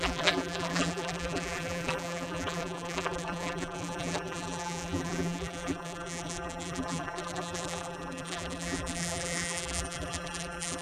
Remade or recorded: remade